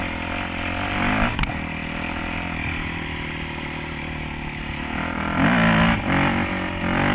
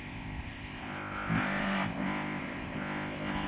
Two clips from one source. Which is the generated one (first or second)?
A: second